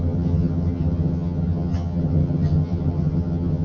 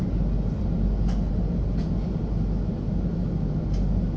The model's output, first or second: first